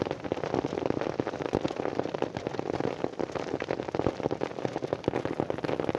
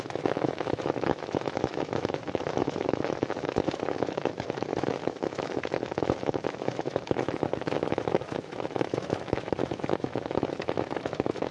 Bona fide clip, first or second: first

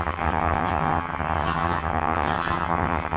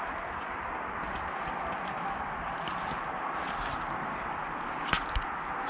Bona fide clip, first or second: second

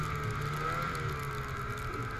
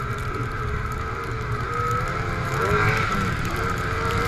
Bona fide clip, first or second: first